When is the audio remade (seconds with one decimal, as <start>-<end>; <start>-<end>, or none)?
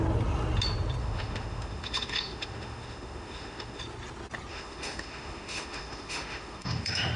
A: 1.0-3.8; 4.5-7.2